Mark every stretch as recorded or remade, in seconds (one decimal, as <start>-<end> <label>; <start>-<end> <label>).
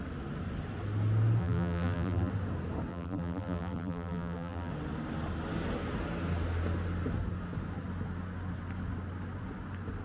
0.0-1.4 recorded; 1.4-2.3 remade; 2.3-2.9 recorded; 2.9-4.7 remade; 4.7-10.0 recorded